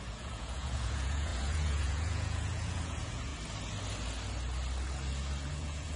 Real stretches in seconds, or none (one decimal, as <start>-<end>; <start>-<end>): 3.3-5.5